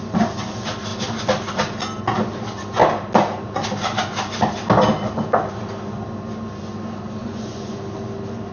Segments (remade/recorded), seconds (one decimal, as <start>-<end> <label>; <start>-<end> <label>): 0.0-7.2 recorded; 7.2-7.8 remade; 7.8-8.5 recorded